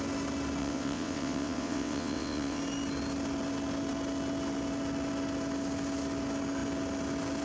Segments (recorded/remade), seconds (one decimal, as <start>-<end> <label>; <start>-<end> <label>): 0.0-0.6 recorded; 0.6-2.6 remade; 2.6-7.4 recorded